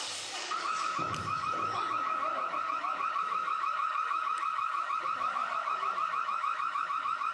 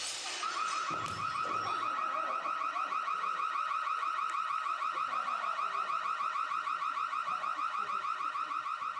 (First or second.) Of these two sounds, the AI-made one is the first